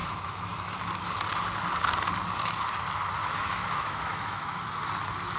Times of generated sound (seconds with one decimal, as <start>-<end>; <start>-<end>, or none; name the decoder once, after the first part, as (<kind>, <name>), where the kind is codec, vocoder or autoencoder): 0.0-0.8 (autoencoder, DAC-VAE); 3.2-4.7